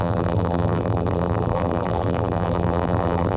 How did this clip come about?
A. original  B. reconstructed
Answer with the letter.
B